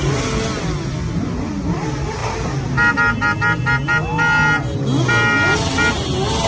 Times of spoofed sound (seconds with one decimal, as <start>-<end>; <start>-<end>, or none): none